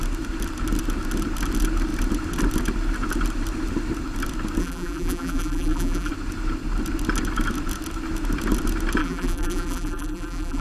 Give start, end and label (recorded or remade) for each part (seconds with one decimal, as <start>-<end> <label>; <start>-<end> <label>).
0.0-4.6 recorded; 4.6-6.1 remade; 6.1-9.0 recorded; 9.0-10.6 remade

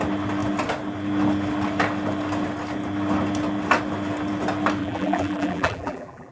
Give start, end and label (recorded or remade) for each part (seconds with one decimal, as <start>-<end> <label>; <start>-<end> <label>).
0.0-4.8 recorded; 4.8-6.3 remade

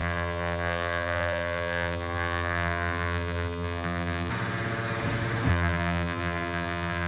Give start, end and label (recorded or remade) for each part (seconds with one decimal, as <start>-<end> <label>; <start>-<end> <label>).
0.0-4.3 remade; 4.3-5.5 recorded; 5.5-7.1 remade